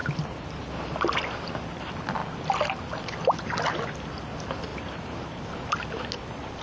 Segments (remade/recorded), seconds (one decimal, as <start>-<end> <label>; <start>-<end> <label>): 0.0-0.6 remade; 0.6-4.7 recorded; 4.7-5.7 remade; 5.7-6.6 recorded